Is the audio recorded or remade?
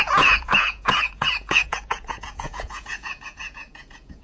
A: remade